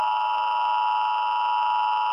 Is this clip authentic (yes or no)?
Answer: yes